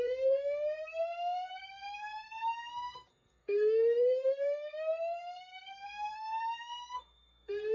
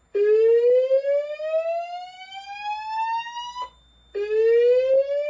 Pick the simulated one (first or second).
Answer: first